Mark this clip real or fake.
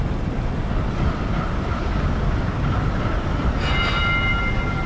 real